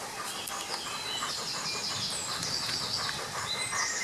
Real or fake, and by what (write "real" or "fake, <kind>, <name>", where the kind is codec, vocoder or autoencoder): real